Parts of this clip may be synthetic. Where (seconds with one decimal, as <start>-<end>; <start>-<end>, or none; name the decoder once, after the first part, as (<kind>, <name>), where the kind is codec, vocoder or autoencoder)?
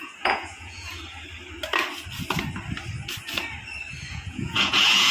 0.0-1.0 (vocoder, Vocos); 4.1-5.1